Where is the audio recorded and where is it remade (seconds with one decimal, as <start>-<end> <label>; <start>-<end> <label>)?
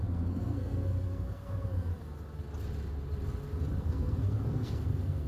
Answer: 0.0-1.9 remade; 1.9-3.8 recorded; 3.8-5.3 remade